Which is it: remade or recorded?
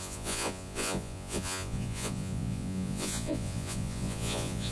remade